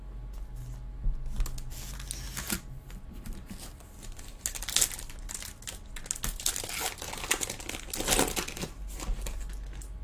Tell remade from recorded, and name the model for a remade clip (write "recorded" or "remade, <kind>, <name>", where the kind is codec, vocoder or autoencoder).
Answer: recorded